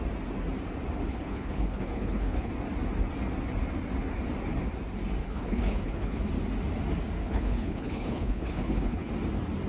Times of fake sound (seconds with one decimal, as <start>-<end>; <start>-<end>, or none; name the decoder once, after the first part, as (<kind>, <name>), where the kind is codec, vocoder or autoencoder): 1.1-2.5 (codec, HILCodec); 5.2-6.2; 7.2-9.1